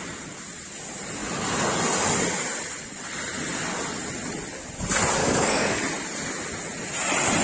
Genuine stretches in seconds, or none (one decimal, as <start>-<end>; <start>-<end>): 0.0-5.2; 5.8-7.4